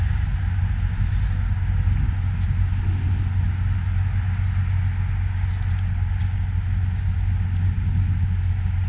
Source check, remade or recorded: recorded